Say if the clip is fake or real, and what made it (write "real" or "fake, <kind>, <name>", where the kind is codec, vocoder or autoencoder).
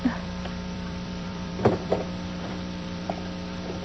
fake, vocoder, BigVGAN v2